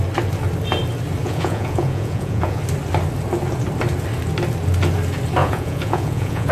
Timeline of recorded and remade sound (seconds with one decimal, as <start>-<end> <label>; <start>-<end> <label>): 0.0-1.2 recorded; 1.2-2.6 remade; 2.6-5.4 recorded; 5.4-6.5 remade